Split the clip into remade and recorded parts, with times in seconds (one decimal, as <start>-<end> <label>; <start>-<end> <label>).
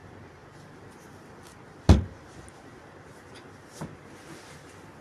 0.0-5.0 recorded